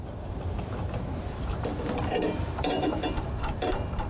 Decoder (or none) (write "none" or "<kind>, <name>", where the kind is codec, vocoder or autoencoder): vocoder, BigVGAN v2